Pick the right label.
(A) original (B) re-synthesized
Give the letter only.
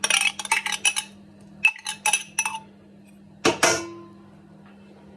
A